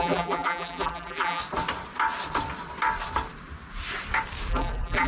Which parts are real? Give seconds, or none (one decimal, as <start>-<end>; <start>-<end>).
1.4-4.5